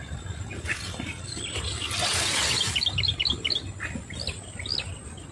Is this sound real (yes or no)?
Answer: yes